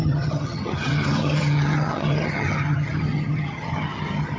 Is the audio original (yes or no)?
no